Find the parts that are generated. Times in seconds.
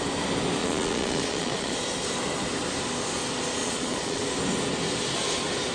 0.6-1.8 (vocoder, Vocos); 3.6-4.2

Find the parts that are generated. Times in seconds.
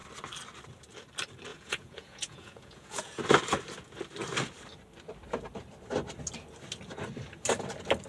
1.5-3.2 (vocoder, Vocos)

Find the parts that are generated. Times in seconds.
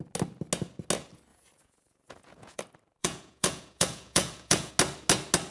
1.3-2.6 (vocoder, Vocos); 3.0-4.7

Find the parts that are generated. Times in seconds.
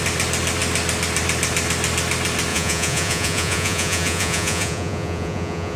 2.5-5.8 (vocoder, Vocos)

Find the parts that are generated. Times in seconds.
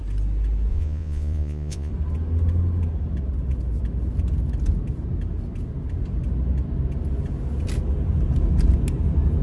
0.7-1.9 (vocoder, Vocos)